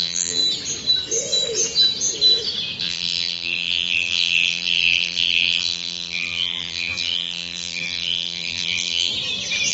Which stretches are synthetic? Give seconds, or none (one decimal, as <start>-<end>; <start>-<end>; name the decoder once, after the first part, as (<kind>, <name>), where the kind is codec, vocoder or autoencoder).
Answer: 0.0-0.4 (vocoder, BigVGAN v2); 2.8-9.1